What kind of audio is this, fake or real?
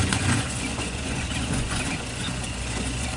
fake